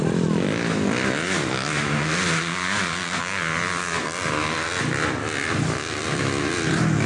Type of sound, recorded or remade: recorded